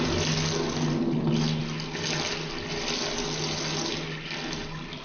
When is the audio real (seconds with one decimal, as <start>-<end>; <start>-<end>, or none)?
0.0-5.0

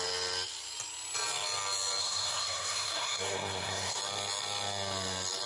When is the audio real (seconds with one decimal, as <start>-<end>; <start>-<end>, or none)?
0.0-2.0; 4.0-5.5

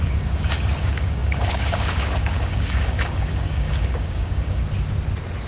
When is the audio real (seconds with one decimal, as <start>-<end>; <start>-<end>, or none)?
4.6-5.5

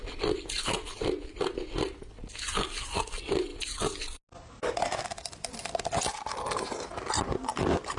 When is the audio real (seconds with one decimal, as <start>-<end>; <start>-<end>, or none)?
0.0-8.0

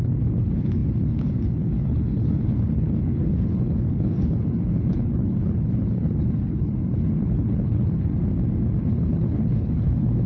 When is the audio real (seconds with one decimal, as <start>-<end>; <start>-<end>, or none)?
8.2-8.8

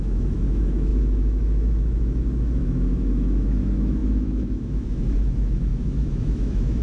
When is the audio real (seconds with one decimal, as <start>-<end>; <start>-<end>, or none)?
none